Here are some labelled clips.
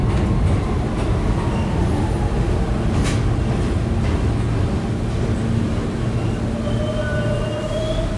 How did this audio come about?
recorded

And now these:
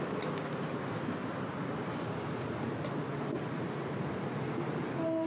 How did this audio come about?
recorded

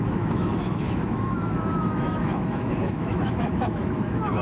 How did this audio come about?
remade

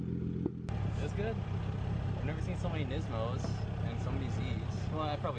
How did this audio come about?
recorded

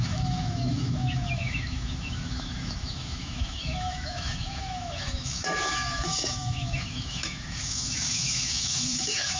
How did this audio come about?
remade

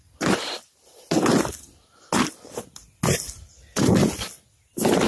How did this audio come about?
recorded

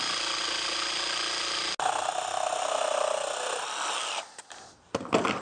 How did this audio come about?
recorded